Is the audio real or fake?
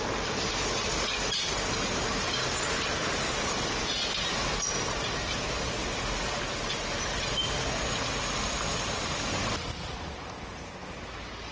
real